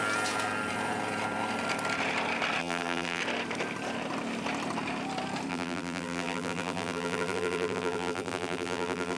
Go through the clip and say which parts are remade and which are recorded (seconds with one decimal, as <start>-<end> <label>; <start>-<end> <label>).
0.0-2.6 recorded; 2.6-3.2 remade; 3.2-5.5 recorded; 5.5-9.2 remade

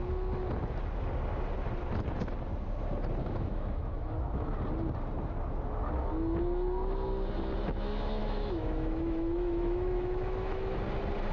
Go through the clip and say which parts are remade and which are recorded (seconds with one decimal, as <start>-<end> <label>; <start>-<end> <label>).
0.0-3.2 recorded; 3.2-4.6 remade; 4.6-8.2 recorded; 8.2-10.8 remade; 10.8-11.3 recorded

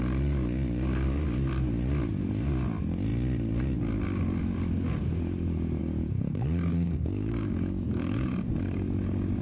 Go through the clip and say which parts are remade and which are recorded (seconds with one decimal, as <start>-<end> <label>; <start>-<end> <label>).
0.0-5.8 recorded; 5.8-8.3 remade; 8.3-9.4 recorded